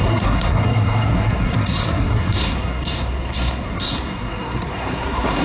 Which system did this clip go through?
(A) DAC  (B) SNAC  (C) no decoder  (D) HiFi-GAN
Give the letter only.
B